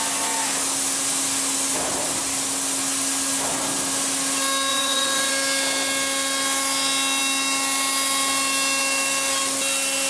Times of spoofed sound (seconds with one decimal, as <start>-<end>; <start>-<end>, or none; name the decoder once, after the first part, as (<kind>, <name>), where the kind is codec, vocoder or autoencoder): 4.7-5.3 (vocoder, Vocos)